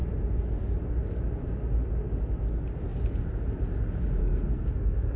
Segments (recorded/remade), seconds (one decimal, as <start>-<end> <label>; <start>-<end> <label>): 0.0-4.2 recorded; 4.2-5.2 remade